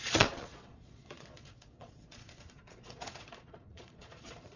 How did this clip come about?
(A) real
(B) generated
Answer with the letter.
B